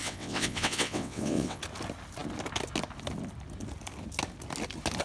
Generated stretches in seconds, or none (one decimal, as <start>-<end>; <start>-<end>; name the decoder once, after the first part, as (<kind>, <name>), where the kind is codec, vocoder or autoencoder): 0.0-1.6 (vocoder, WaveNeXt)